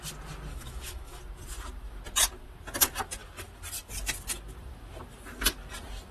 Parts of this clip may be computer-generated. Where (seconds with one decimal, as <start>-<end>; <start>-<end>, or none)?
0.5-1.2